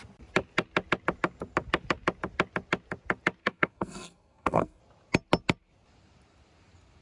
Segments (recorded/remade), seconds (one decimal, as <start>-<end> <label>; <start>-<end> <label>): 0.0-3.4 recorded; 3.4-4.8 remade; 4.8-7.0 recorded